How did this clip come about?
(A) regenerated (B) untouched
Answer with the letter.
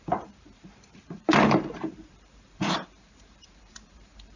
A